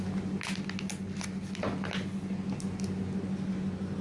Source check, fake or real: real